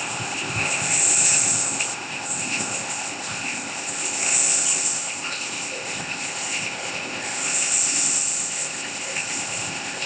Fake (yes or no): yes